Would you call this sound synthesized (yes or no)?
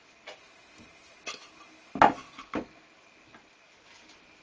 no